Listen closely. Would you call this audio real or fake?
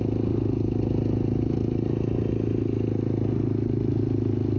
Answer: real